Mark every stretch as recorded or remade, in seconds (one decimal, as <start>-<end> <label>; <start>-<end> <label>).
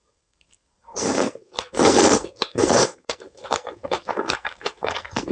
0.0-5.3 remade